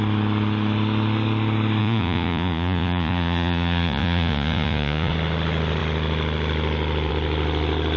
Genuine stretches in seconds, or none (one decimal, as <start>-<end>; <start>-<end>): 0.0-1.8; 5.1-8.0